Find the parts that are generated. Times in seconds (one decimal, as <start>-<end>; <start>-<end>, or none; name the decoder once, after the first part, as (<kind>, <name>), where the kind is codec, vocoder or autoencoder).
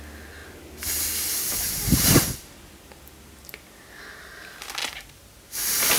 4.8-5.6 (vocoder, BigVGAN v2)